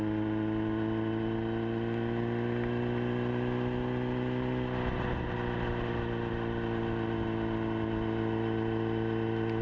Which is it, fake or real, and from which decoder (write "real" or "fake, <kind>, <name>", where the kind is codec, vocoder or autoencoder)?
real